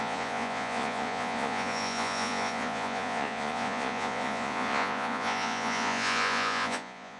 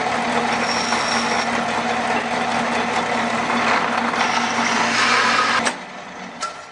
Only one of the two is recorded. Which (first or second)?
second